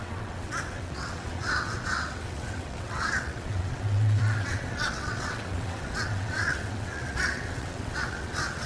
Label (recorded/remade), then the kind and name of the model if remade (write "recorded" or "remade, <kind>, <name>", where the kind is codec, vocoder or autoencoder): remade, vocoder, WaveNeXt